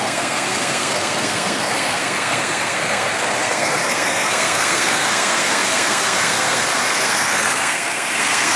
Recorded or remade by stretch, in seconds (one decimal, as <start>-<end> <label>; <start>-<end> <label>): 0.0-8.6 remade